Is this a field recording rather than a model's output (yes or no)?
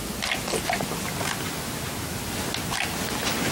yes